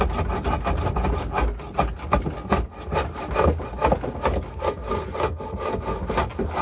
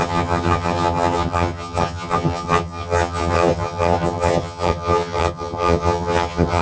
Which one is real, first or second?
first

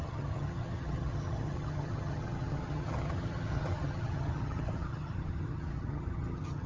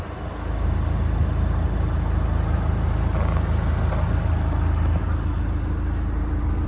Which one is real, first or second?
second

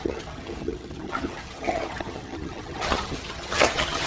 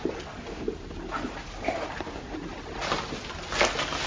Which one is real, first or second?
second